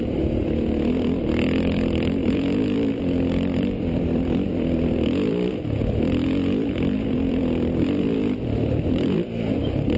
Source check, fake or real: fake